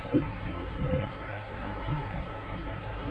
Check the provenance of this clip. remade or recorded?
remade